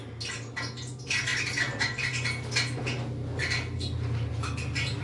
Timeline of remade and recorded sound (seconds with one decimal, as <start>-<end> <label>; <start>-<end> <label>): 0.0-5.0 recorded

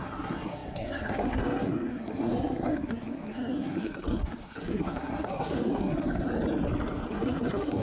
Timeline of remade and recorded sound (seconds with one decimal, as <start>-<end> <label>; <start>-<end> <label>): 0.0-6.3 remade; 6.3-7.1 recorded; 7.1-7.8 remade

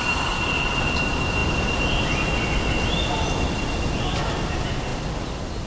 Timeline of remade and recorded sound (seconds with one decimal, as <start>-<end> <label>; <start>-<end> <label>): 0.0-5.7 recorded

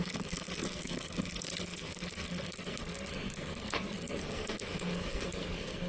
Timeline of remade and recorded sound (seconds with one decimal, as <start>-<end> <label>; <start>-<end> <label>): 0.0-5.9 remade